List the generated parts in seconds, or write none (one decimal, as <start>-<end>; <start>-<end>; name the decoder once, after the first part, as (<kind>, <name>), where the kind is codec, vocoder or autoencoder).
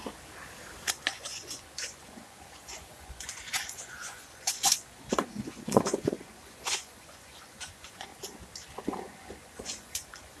0.9-8.1 (vocoder, Vocos); 9.0-10.4